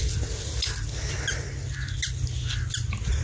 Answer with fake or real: real